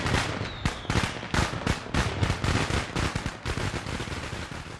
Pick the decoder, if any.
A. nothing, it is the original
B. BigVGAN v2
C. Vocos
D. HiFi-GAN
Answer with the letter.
A